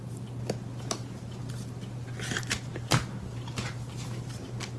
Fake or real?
real